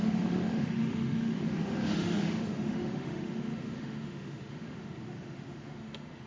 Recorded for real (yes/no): no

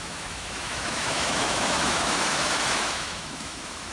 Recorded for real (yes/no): no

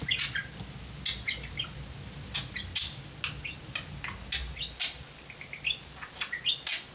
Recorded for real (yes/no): yes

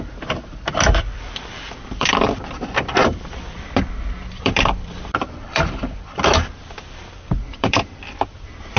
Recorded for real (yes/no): no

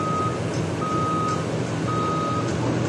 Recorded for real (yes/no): yes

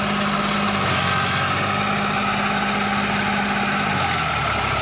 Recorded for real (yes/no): yes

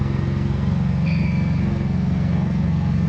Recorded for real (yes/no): no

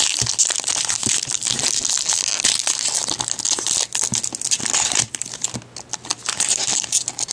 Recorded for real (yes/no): yes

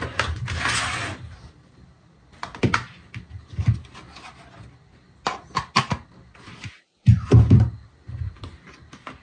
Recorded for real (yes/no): yes